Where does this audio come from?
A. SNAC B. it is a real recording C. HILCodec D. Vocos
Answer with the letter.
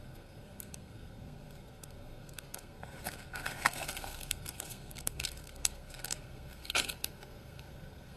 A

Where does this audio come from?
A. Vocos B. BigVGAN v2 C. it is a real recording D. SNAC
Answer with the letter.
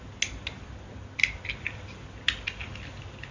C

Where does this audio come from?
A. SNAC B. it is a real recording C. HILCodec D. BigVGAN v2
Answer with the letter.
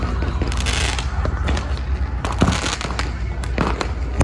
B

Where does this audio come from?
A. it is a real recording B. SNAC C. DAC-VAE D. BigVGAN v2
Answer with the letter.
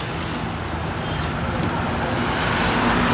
A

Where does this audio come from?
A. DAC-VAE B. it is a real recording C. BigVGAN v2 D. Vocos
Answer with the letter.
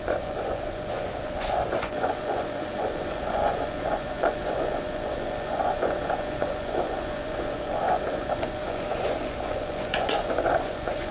D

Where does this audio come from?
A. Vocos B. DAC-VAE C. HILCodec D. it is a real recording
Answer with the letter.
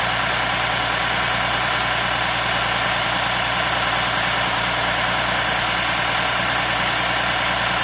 D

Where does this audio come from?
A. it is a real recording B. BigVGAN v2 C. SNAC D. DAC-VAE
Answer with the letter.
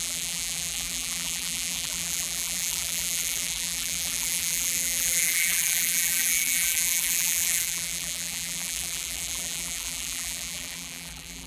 B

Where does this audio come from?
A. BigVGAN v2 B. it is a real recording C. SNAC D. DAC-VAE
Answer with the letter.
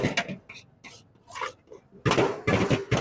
B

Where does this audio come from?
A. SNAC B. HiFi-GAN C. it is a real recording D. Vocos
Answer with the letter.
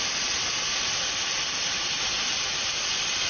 C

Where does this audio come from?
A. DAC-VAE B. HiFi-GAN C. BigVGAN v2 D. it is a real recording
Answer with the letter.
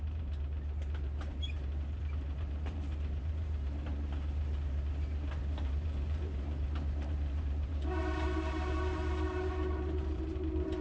C